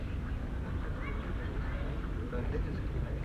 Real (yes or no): yes